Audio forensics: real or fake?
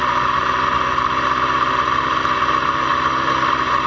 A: real